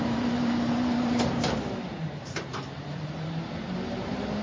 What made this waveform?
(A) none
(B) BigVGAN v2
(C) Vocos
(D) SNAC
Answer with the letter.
B